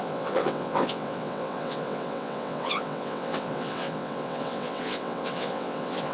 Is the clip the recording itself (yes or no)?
no